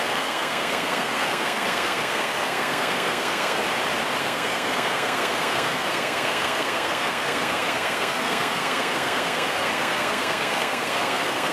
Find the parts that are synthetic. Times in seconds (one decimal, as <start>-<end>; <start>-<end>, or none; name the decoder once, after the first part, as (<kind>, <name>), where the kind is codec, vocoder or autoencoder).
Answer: 0.0-3.6 (codec, SNAC); 4.2-11.5